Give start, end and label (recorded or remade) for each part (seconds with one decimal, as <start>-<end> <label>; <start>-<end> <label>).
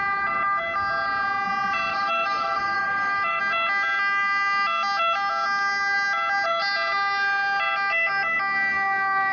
0.0-1.9 recorded; 1.9-3.4 remade; 3.4-9.3 recorded